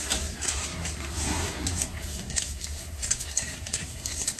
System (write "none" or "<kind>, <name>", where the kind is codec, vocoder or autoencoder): codec, SNAC